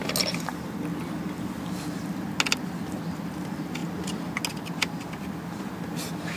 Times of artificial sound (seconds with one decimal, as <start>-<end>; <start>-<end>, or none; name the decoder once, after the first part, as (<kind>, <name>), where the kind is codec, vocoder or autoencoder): none